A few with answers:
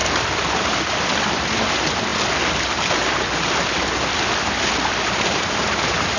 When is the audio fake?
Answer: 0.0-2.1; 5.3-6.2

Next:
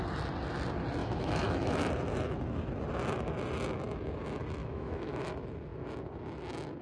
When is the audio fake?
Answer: 1.0-1.9; 4.6-5.3

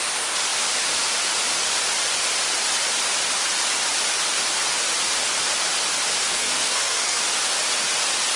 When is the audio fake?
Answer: 6.2-7.2

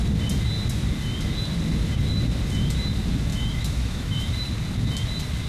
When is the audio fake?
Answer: 3.3-4.3

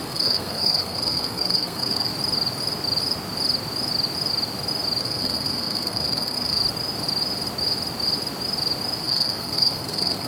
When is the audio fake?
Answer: 0.0-2.1; 5.0-6.6; 9.0-10.3

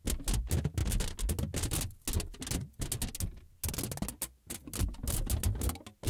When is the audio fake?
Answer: none

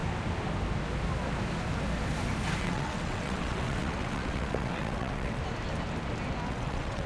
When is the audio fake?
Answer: 2.6-5.4; 6.5-7.1